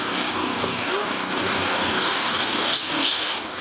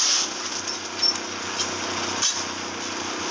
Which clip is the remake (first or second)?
first